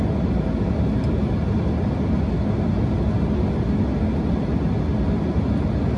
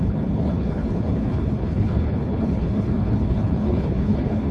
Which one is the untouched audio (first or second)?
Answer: first